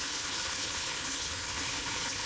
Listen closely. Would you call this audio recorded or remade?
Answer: remade